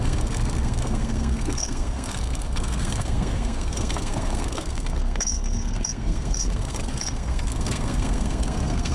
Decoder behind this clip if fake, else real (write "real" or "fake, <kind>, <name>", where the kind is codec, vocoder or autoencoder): fake, codec, SNAC